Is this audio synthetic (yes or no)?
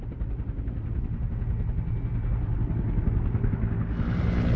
no